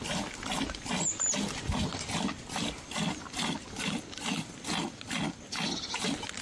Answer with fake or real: real